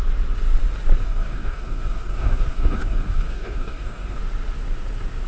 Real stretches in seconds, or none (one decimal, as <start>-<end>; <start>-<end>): 0.0-1.0; 4.2-5.3